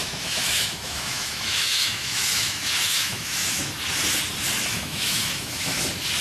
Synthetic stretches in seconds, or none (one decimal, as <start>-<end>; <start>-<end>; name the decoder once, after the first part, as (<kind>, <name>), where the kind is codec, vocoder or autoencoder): 0.0-3.7 (autoencoder, DAC-VAE); 4.7-5.8